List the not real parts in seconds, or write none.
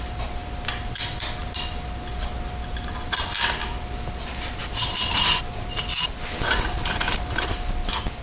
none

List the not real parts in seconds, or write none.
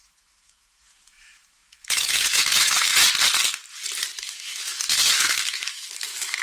0.0-2.9 (autoencoder, DAC-VAE); 4.2-6.4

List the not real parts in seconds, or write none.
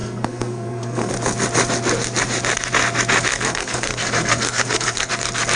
0.0-1.1 (codec, SNAC); 3.3-5.1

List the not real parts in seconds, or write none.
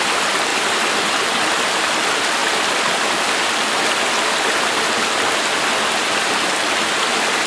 none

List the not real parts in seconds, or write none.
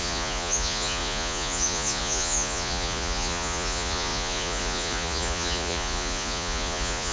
0.0-7.1 (vocoder, Vocos)